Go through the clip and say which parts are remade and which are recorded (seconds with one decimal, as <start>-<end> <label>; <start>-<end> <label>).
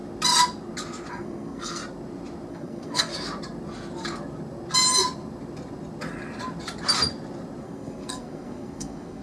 0.0-1.1 recorded; 1.1-1.8 remade; 1.8-2.5 recorded; 2.5-3.1 remade; 3.1-7.6 recorded; 7.6-9.2 remade